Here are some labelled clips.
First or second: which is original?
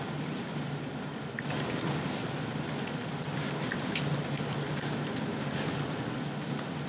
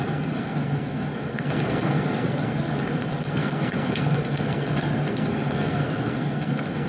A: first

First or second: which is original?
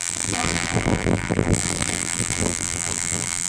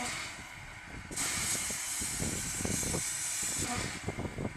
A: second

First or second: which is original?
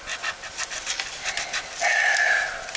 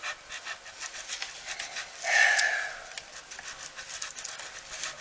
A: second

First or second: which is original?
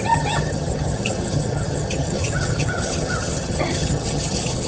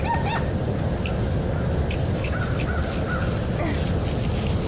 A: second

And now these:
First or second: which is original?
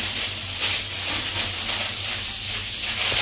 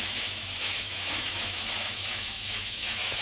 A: first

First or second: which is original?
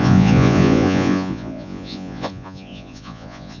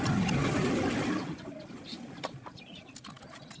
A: second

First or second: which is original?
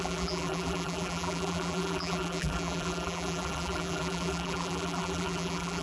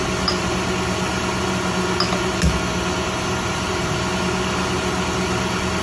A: second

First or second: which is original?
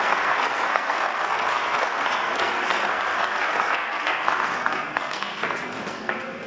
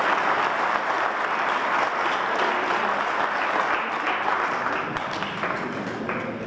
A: second